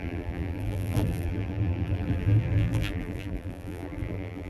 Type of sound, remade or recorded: remade